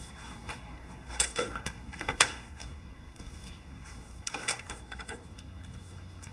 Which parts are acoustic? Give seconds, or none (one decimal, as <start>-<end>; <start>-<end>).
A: none